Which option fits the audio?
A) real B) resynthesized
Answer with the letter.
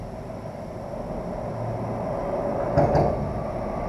A